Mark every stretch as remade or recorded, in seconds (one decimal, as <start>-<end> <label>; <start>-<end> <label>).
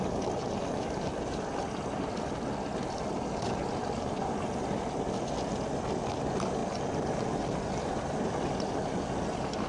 0.0-9.7 recorded